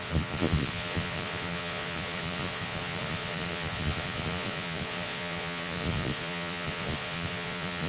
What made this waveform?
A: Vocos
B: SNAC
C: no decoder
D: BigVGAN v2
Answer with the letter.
A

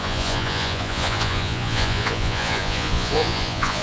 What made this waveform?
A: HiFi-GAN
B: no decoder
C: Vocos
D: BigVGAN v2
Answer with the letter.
C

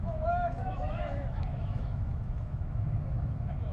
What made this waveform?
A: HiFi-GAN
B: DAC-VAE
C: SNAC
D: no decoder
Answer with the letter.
B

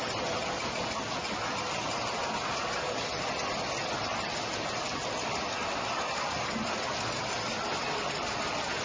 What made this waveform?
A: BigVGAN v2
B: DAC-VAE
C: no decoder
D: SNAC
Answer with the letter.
C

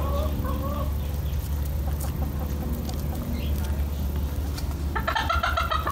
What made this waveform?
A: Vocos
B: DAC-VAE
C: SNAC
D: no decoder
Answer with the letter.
D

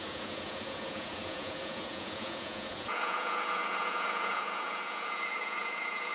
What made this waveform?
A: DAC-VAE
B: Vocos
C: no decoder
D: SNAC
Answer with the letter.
B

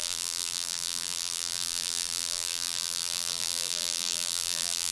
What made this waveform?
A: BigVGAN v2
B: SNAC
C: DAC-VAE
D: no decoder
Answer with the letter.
A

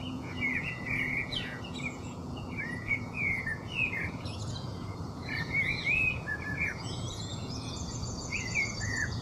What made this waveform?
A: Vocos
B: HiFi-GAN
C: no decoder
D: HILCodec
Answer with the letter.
A